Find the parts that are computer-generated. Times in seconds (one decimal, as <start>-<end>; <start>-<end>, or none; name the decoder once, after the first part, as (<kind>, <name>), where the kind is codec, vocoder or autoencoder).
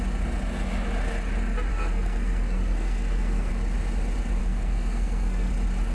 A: 1.7-3.5 (codec, SNAC); 4.4-5.5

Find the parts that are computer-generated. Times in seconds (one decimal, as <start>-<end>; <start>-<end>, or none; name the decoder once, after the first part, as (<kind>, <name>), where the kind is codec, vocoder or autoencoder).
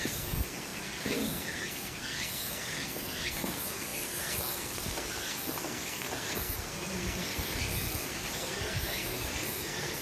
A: 0.0-10.0 (codec, SNAC)